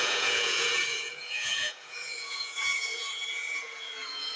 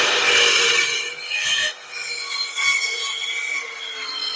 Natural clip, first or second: second